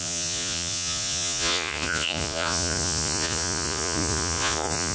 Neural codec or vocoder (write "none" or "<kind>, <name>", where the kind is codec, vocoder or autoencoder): vocoder, Vocos